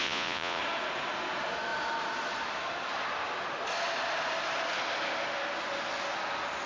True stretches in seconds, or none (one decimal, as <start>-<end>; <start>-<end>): 0.6-6.7